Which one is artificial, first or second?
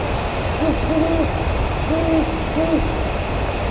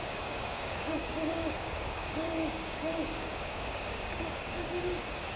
second